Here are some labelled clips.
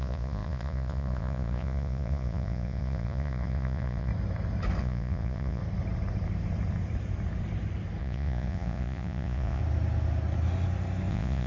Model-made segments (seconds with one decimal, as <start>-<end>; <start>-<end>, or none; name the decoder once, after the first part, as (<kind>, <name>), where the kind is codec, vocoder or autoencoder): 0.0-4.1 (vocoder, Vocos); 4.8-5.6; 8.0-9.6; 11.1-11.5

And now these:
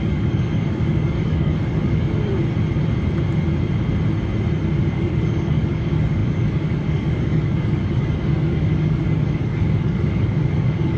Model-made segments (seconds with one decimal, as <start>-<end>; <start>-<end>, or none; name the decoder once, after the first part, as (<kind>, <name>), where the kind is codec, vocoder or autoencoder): 0.0-2.3 (codec, DAC); 4.9-11.0

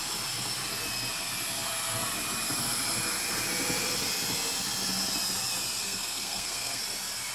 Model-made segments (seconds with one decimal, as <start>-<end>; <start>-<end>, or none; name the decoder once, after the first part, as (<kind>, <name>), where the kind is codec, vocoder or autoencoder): 5.8-6.8 (codec, SNAC)

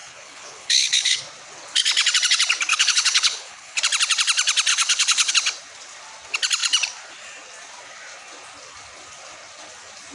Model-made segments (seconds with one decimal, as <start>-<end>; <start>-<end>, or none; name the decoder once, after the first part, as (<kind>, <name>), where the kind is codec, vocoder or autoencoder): 0.0-1.2 (codec, HILCodec); 2.7-3.8; 4.7-5.3

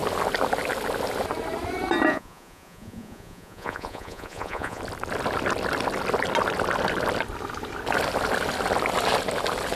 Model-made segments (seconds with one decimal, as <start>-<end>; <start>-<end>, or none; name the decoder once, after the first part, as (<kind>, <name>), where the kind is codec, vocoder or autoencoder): 2.1-4.8 (vocoder, Vocos)

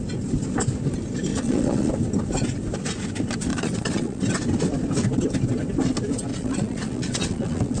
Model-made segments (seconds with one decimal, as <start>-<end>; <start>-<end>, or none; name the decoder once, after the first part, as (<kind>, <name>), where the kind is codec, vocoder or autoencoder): 1.3-1.9 (vocoder, Vocos); 3.5-4.2; 6.3-7.8